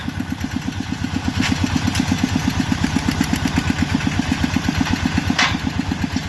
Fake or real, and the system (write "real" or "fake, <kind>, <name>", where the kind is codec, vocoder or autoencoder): real